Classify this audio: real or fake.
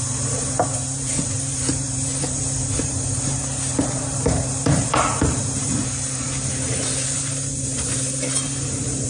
fake